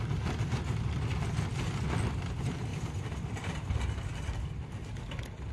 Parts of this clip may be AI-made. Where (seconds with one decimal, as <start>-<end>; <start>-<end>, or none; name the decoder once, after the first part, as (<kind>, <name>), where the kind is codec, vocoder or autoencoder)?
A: none